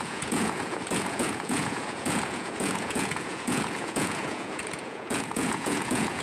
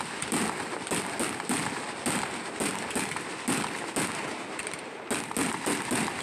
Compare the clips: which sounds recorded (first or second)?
second